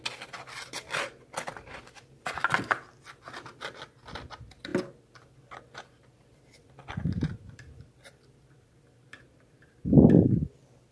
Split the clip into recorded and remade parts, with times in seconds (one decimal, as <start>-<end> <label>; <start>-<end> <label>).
0.0-6.6 recorded; 6.6-9.6 remade; 9.6-10.9 recorded